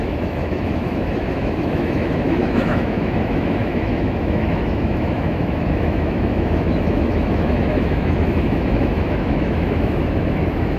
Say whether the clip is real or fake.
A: fake